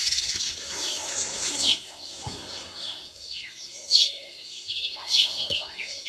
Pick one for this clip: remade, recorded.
remade